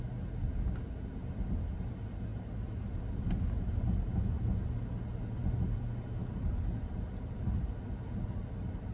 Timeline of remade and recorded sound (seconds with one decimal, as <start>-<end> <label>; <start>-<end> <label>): 0.0-8.9 recorded